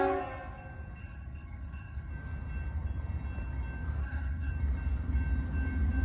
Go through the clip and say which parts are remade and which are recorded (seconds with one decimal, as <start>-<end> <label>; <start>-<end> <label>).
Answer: 0.0-1.0 recorded; 1.0-2.1 remade; 2.1-4.0 recorded; 4.0-4.5 remade; 4.5-6.0 recorded